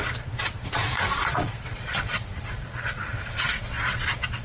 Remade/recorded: remade